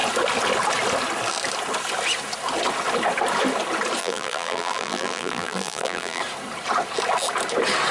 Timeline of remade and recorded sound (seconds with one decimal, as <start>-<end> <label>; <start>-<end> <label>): 0.0-4.0 recorded; 4.0-6.2 remade; 6.2-7.9 recorded